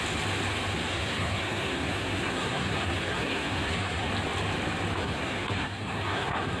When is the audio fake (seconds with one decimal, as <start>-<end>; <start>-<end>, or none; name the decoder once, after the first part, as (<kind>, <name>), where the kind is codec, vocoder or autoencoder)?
0.9-4.1 (codec, SNAC); 5.0-6.6